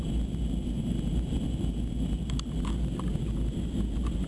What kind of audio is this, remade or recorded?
recorded